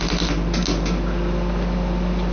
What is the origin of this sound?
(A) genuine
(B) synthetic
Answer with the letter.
A